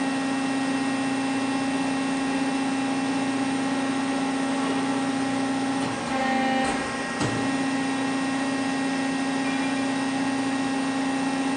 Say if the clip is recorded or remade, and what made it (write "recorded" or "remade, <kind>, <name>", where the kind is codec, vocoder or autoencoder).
recorded